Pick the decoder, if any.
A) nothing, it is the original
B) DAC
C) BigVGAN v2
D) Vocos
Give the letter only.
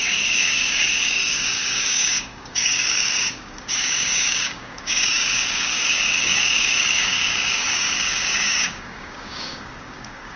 B